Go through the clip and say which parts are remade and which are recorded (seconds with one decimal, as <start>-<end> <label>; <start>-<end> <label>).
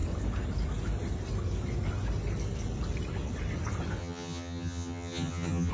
0.0-4.0 recorded; 4.0-5.7 remade